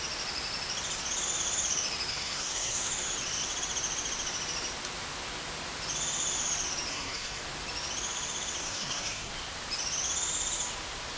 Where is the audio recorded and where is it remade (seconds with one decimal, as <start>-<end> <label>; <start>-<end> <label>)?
0.0-2.1 recorded; 2.1-2.9 remade; 2.9-6.9 recorded; 6.9-7.4 remade; 7.4-8.6 recorded; 8.6-9.3 remade; 9.3-11.2 recorded